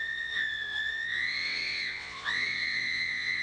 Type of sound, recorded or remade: remade